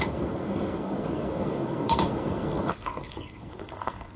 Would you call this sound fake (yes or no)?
yes